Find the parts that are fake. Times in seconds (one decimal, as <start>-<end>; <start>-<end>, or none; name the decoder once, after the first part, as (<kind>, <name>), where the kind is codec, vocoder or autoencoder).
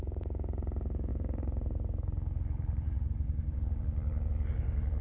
1.1-3.8 (vocoder, BigVGAN v2)